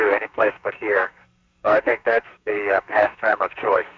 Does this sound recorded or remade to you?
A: remade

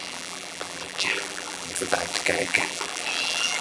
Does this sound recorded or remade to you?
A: remade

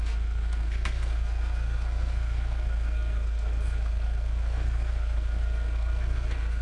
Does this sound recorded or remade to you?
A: remade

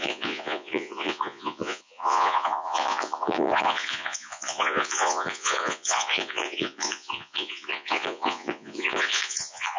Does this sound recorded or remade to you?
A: remade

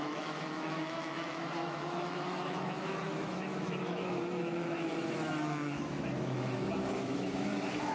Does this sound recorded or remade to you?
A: remade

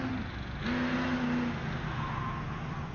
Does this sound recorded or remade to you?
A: recorded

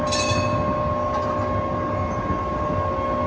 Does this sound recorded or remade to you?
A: recorded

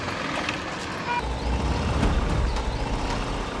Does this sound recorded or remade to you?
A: recorded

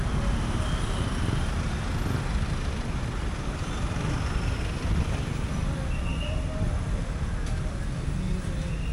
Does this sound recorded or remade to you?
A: recorded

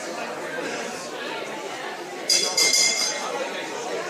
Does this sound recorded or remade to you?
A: remade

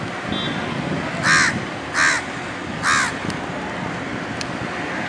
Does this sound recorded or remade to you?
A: recorded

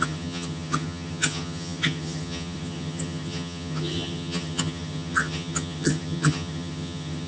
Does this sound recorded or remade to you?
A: remade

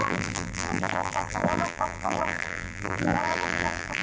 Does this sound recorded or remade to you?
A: remade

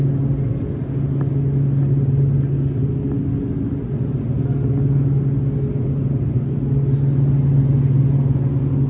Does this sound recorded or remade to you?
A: recorded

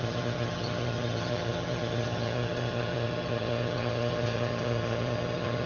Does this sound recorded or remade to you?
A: remade